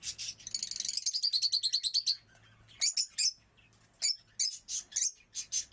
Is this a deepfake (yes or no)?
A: no